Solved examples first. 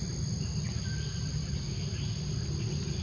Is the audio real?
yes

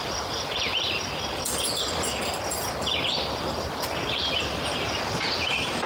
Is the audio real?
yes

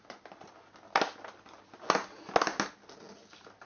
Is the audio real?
yes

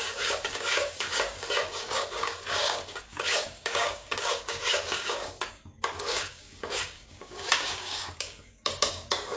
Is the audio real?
no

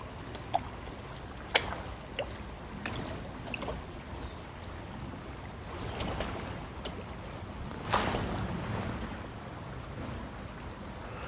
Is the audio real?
yes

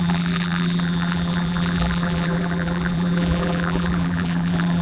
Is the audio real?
no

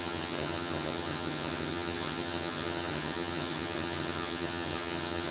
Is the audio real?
no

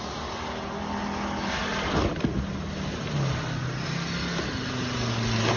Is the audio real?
yes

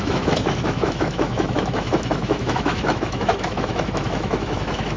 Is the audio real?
no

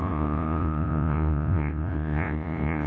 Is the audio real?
no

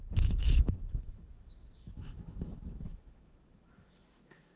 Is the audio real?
no